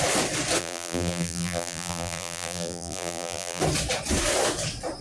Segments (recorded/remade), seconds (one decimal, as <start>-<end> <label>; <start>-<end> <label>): 0.0-0.6 recorded; 0.6-3.6 remade; 3.6-5.0 recorded